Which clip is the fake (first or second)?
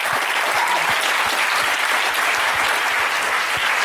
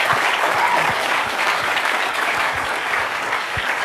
second